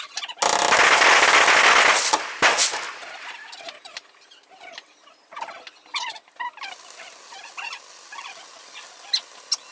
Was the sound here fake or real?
real